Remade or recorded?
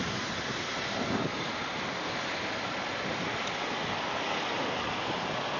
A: recorded